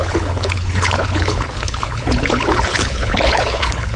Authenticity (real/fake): fake